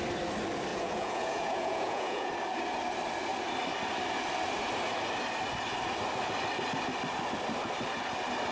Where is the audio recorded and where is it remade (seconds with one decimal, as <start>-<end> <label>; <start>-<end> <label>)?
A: 0.0-0.7 recorded; 0.7-2.3 remade; 2.3-8.5 recorded